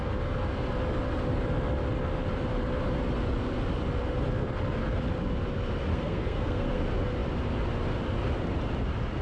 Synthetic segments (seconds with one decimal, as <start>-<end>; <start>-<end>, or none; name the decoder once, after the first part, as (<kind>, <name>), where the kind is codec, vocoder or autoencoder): 5.9-6.8 (codec, SNAC)